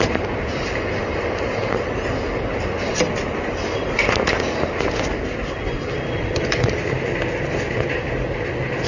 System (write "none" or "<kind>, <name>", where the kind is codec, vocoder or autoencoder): none